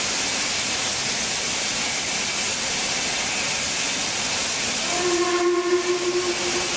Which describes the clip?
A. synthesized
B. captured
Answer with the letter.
B